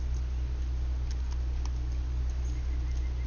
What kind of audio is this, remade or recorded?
recorded